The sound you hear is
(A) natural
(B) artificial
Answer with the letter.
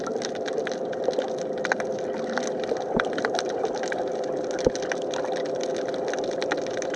A